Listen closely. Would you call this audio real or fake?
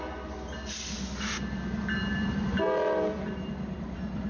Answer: real